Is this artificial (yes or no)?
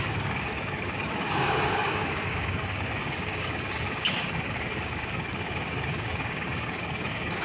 yes